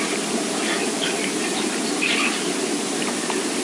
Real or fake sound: real